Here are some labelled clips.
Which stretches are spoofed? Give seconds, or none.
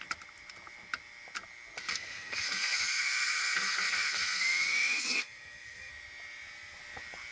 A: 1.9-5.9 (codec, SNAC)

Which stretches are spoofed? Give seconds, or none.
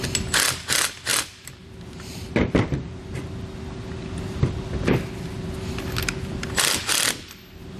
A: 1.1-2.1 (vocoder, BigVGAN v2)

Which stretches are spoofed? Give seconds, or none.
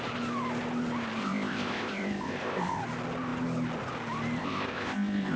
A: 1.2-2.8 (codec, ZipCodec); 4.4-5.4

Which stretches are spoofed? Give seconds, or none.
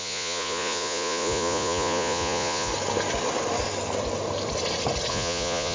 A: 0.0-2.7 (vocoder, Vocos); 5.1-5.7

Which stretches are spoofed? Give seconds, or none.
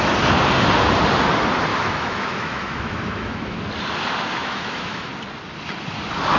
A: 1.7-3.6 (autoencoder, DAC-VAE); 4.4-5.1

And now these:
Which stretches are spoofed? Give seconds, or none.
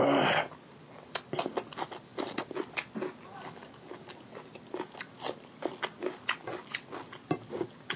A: none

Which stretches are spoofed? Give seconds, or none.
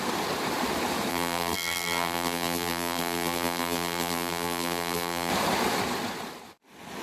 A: 1.1-5.3 (vocoder, BigVGAN v2)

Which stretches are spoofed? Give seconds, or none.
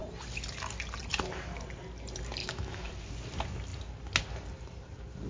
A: 2.4-2.9 (autoencoder, DAC-VAE)